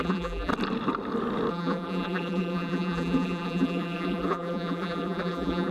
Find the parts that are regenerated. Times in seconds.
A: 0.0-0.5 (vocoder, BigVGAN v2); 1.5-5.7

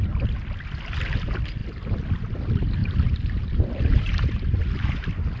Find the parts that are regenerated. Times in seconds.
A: 2.8-3.8 (vocoder, BigVGAN v2)

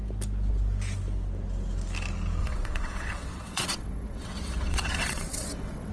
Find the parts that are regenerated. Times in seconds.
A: 2.4-5.9 (vocoder, WaveNeXt)

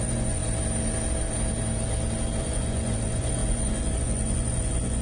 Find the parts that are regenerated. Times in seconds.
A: 0.0-0.4 (vocoder, Vocos); 2.4-5.0

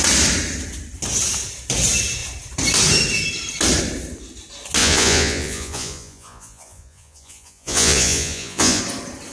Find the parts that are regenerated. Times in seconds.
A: 4.8-8.8 (vocoder, Vocos)